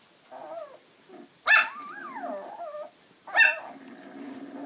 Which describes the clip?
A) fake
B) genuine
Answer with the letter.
B